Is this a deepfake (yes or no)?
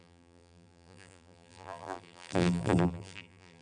yes